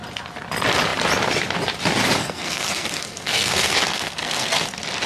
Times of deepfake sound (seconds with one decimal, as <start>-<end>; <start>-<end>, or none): 2.2-4.6